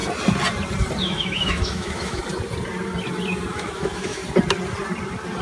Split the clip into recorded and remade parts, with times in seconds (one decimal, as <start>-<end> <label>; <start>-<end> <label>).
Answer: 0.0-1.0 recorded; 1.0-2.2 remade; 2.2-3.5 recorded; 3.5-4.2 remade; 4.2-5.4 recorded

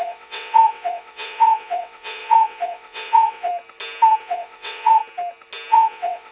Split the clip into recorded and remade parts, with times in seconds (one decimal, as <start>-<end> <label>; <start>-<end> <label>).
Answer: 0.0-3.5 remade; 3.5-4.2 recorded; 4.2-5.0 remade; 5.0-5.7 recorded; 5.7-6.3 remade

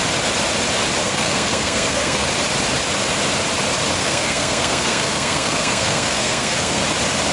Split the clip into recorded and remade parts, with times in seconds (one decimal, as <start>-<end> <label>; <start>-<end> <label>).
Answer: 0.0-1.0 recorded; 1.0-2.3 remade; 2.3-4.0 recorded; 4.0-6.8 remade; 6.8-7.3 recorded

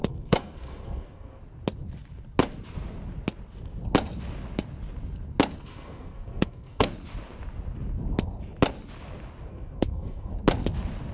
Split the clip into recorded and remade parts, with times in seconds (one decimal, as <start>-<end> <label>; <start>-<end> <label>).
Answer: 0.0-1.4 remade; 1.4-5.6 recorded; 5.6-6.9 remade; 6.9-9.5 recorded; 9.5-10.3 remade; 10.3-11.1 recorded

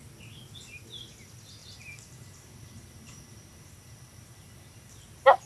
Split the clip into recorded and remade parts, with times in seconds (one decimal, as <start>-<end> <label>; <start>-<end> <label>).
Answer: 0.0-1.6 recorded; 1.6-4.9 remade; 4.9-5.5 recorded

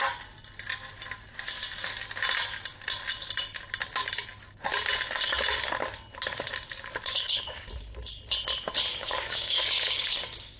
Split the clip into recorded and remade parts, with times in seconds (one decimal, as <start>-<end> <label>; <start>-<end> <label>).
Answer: 0.0-7.1 recorded; 7.1-7.7 remade; 7.7-8.9 recorded; 8.9-10.6 remade